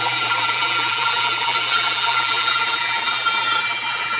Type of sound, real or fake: fake